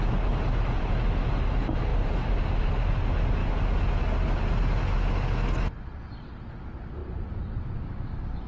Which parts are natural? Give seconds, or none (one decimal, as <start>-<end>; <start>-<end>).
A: 0.0-1.9; 2.8-7.0; 7.6-8.5